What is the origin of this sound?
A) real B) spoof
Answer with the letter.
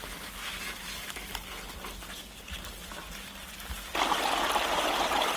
A